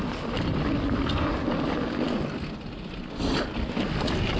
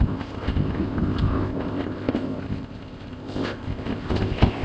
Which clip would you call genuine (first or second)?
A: first